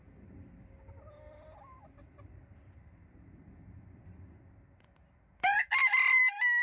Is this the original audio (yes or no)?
no